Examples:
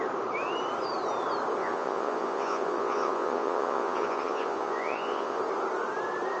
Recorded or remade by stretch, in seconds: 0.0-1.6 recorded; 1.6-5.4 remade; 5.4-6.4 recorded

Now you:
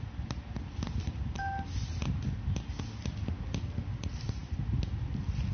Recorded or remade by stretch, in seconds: 0.0-5.5 recorded

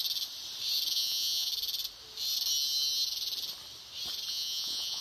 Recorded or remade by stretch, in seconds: 0.0-0.9 recorded; 0.9-1.5 remade; 1.5-4.3 recorded; 4.3-5.0 remade

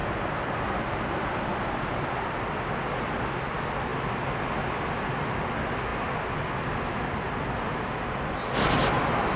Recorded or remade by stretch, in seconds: 0.0-9.4 recorded

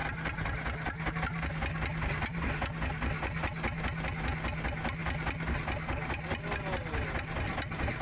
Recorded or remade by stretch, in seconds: 0.0-8.0 recorded

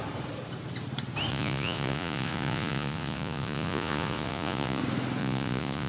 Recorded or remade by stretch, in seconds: 0.0-1.3 recorded; 1.3-4.8 remade; 4.8-5.2 recorded; 5.2-5.9 remade

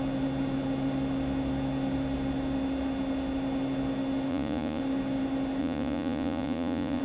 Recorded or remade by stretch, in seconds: 0.0-4.3 recorded; 4.3-4.8 remade; 4.8-5.6 recorded; 5.6-7.0 remade

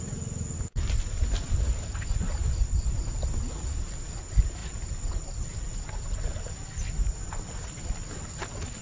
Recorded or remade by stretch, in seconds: 0.0-8.8 recorded